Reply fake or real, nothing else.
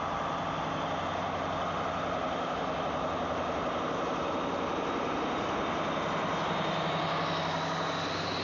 real